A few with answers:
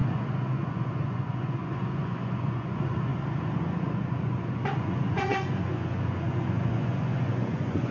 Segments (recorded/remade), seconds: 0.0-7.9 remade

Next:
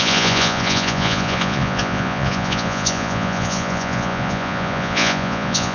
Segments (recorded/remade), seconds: 0.0-5.7 remade

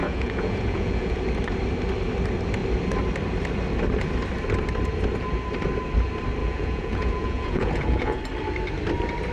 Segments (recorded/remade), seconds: 0.0-1.2 remade; 1.2-6.4 recorded; 6.4-8.2 remade; 8.2-9.3 recorded